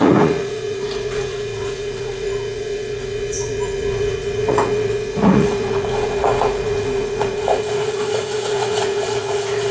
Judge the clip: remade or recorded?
remade